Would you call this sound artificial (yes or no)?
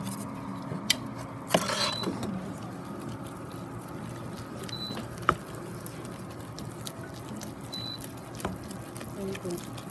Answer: no